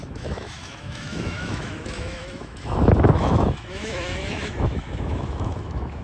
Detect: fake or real fake